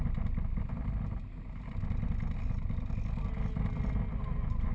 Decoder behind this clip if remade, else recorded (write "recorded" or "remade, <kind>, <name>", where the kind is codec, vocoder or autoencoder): recorded